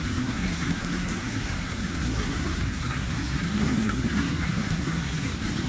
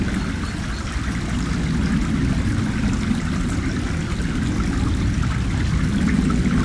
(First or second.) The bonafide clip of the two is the second